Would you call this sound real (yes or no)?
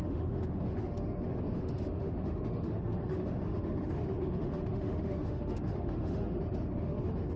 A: no